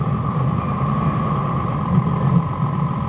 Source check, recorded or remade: recorded